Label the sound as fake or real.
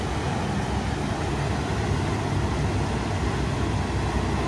real